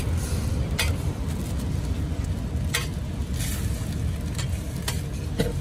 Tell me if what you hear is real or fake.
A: real